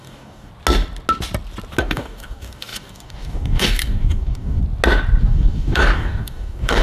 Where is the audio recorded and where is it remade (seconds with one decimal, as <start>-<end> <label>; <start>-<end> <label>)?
0.0-0.5 remade; 0.5-1.8 recorded; 1.8-4.6 remade; 4.6-5.2 recorded; 5.2-6.8 remade